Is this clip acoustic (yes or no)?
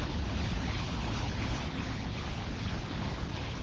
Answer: no